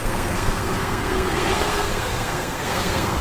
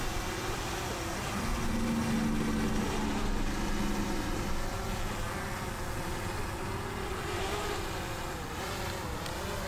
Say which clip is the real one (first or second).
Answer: second